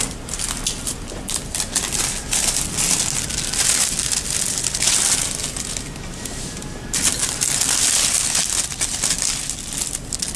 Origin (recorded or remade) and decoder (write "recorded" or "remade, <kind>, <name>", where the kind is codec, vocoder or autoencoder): recorded